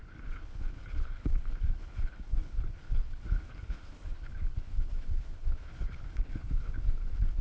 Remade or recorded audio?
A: remade